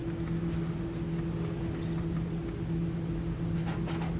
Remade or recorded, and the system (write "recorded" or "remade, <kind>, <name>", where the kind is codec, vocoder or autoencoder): recorded